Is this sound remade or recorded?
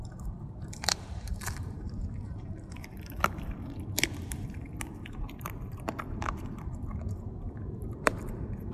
remade